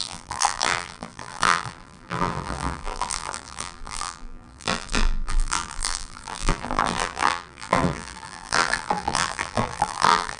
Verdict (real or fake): fake